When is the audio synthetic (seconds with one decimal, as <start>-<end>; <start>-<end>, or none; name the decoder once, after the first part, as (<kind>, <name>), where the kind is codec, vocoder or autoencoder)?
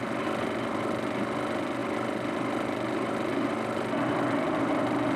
none